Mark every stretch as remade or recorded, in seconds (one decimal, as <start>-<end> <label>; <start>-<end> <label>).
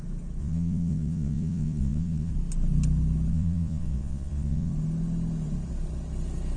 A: 0.0-0.4 recorded; 0.4-2.3 remade; 2.3-3.3 recorded; 3.3-4.7 remade; 4.7-6.6 recorded